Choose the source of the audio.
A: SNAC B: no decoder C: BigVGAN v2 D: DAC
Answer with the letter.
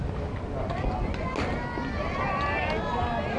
B